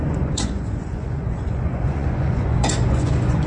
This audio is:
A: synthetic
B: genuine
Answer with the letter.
A